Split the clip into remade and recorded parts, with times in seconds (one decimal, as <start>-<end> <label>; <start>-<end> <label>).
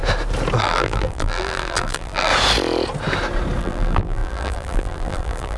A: 0.0-0.6 recorded; 0.6-2.3 remade; 2.3-3.6 recorded; 3.6-5.6 remade